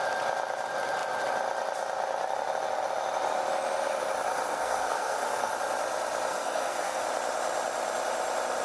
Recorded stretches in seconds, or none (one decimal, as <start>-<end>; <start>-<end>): 0.0-4.5; 5.5-6.3; 7.0-8.6